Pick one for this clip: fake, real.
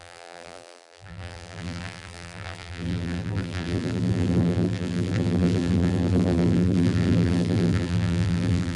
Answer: fake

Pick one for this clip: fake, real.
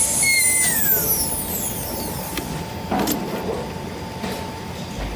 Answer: real